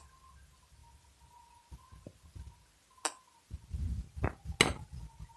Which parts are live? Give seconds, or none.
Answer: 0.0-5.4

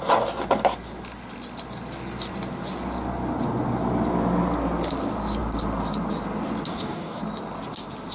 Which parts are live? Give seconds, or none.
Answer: 0.0-6.7; 7.2-8.1

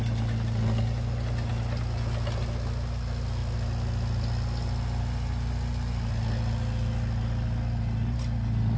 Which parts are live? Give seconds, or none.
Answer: 0.0-8.8

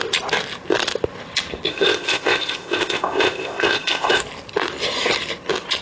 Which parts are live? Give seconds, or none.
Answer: 0.0-1.7; 4.2-5.8

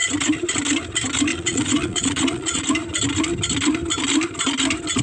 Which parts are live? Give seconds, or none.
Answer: 0.0-1.3; 2.6-5.0